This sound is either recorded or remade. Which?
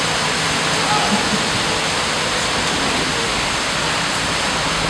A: recorded